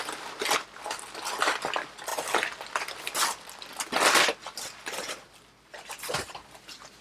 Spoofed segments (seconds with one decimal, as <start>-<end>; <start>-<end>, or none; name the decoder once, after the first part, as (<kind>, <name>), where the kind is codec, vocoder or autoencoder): none